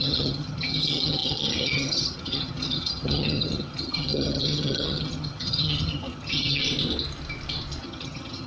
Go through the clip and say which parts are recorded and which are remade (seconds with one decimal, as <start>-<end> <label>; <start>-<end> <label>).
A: 0.0-6.6 remade; 6.6-7.8 recorded; 7.8-8.5 remade

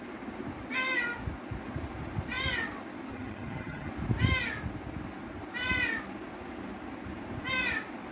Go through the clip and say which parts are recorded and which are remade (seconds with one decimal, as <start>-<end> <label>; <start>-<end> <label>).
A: 0.0-3.1 recorded; 3.1-3.9 remade; 3.9-8.1 recorded

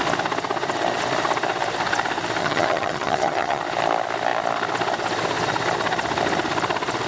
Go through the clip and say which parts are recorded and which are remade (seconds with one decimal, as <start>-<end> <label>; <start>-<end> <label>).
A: 0.0-2.4 recorded; 2.4-3.6 remade; 3.6-7.1 recorded